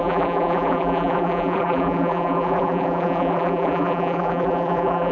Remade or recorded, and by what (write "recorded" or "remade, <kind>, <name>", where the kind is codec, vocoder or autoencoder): remade, vocoder, BigVGAN v2